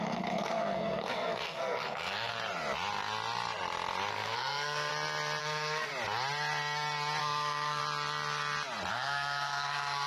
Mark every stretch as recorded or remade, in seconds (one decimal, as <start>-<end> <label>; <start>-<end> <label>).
0.0-2.3 remade; 2.3-4.1 recorded; 4.1-4.9 remade; 4.9-5.4 recorded; 5.4-5.9 remade; 5.9-7.2 recorded; 7.2-7.8 remade; 7.8-8.9 recorded; 8.9-10.1 remade